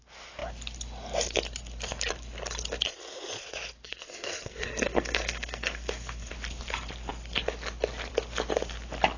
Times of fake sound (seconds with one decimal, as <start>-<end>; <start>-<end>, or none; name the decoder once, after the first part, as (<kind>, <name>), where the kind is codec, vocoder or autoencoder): 3.9-6.3 (codec, SNAC)